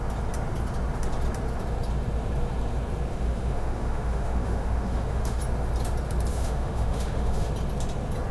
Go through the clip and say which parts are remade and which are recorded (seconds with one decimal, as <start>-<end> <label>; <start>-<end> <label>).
0.0-3.1 recorded; 3.1-5.4 remade; 5.4-6.3 recorded; 6.3-7.5 remade; 7.5-8.3 recorded